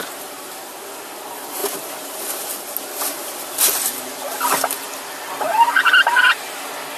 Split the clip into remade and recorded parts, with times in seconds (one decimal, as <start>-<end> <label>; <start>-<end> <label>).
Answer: 0.0-7.0 recorded